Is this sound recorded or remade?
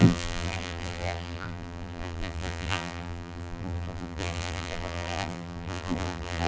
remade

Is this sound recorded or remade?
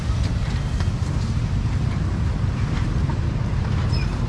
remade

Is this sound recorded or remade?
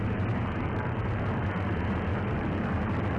remade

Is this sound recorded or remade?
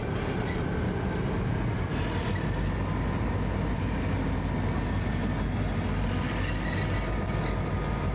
recorded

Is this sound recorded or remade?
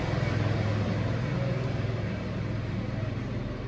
remade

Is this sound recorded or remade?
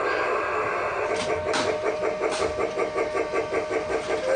remade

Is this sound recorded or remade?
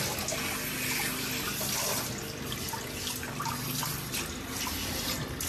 recorded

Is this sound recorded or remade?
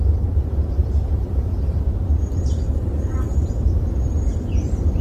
remade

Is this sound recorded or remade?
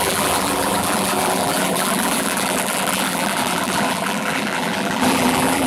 remade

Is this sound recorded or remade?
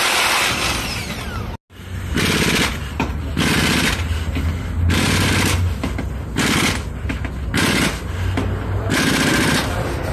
recorded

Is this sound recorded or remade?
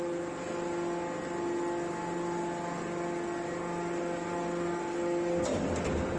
recorded